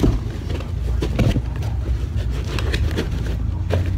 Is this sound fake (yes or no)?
no